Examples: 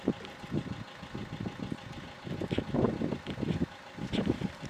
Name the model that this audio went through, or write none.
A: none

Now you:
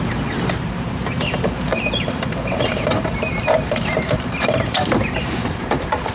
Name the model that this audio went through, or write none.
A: vocoder, BigVGAN v2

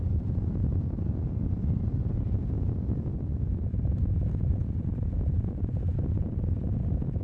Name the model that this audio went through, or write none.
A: none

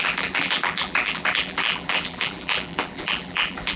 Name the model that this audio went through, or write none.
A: vocoder, BigVGAN v2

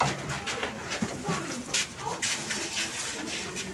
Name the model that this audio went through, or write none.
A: none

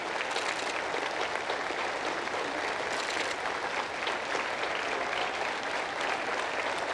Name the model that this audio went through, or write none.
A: none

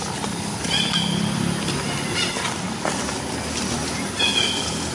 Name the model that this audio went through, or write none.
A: none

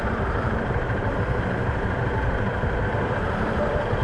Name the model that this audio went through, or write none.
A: vocoder, BigVGAN v2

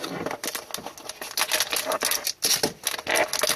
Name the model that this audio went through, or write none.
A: none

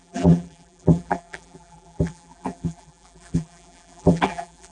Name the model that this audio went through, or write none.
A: vocoder, BigVGAN v2